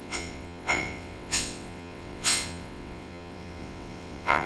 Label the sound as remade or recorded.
remade